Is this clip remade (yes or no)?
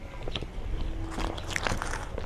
no